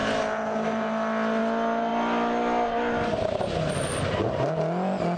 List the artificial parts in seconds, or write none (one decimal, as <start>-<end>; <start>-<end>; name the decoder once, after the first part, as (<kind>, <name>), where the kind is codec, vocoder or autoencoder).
none